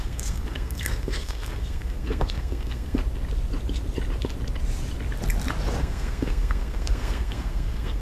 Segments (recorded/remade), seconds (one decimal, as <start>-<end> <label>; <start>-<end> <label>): 0.0-3.0 remade; 3.0-5.8 recorded; 5.8-8.0 remade